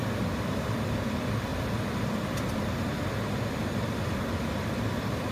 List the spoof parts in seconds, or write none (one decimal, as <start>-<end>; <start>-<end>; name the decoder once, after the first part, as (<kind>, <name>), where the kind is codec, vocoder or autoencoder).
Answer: 0.0-1.5 (vocoder, BigVGAN v2); 4.0-5.3